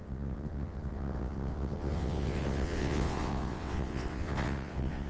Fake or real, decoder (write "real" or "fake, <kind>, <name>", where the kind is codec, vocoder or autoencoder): fake, vocoder, WaveNeXt